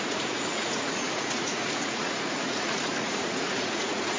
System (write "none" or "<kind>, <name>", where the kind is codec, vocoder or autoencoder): vocoder, Vocos